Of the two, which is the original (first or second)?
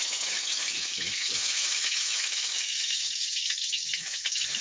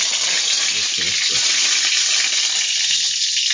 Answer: second